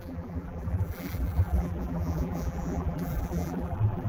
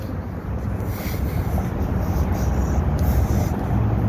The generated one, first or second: first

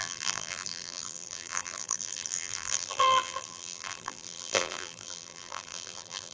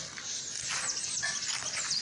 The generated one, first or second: first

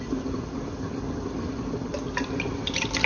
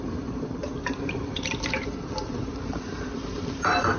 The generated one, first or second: second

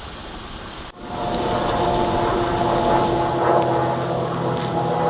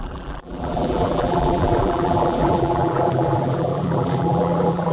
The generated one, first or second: second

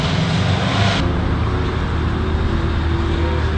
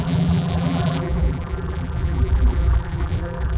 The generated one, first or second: second